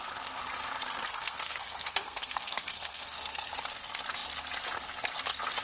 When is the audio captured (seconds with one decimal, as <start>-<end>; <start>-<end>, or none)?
0.0-1.0; 3.5-5.6